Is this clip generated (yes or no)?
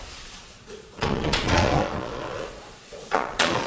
yes